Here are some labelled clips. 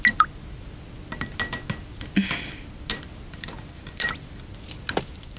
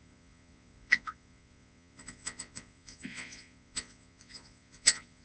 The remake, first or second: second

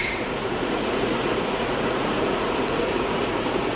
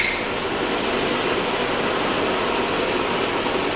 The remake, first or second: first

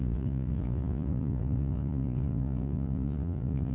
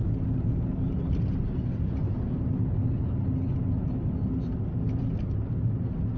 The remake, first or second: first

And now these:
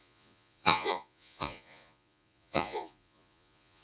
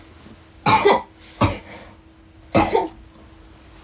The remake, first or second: first